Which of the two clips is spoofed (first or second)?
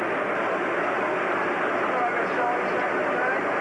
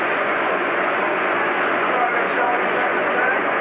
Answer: second